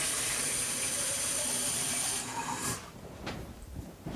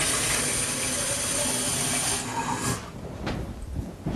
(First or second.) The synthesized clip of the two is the first